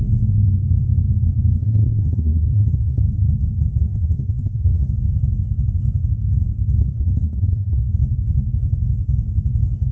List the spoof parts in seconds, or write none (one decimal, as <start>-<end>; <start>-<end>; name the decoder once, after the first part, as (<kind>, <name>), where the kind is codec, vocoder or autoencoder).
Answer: 1.6-3.0 (codec, SNAC); 3.8-4.9; 6.8-7.9